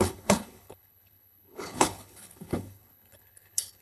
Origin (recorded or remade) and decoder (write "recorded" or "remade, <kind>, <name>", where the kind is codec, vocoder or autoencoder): remade, codec, HILCodec